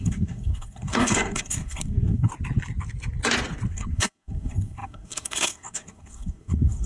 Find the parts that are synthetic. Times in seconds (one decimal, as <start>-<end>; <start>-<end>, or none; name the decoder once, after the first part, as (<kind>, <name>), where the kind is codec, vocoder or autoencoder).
0.0-2.3 (codec, SNAC); 3.7-6.9